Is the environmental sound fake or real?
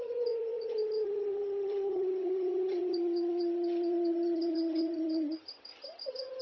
fake